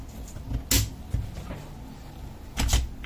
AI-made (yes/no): no